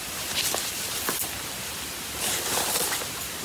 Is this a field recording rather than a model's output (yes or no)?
no